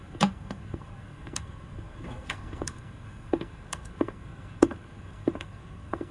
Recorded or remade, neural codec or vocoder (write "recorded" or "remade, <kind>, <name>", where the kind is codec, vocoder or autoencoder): remade, codec, SNAC